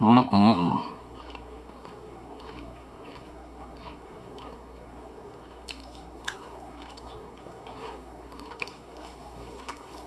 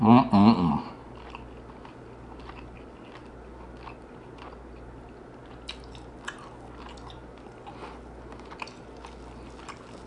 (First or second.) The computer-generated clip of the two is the first